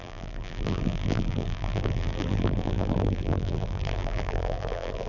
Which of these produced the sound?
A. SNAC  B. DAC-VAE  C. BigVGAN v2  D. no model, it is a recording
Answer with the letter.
C